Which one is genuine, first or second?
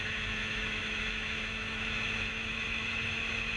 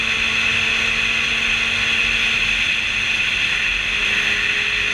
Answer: second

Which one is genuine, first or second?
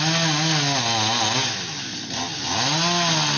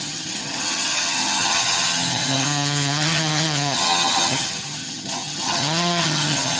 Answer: first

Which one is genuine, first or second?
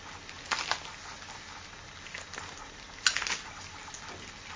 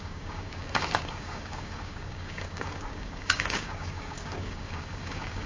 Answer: first